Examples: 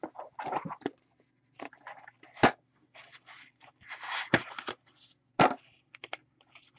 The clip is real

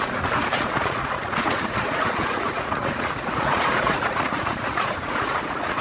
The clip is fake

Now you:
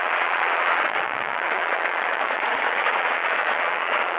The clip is fake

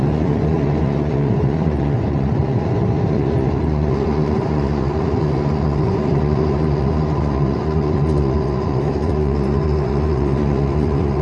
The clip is fake